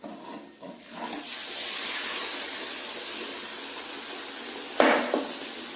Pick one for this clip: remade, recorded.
recorded